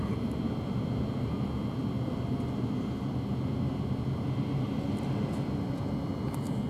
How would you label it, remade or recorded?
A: recorded